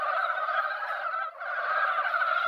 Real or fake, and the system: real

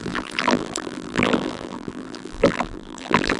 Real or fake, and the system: fake, vocoder, BigVGAN v2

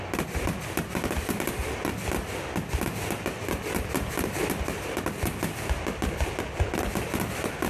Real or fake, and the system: real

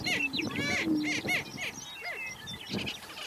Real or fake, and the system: real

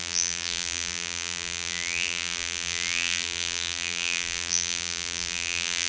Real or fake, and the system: fake, vocoder, BigVGAN v2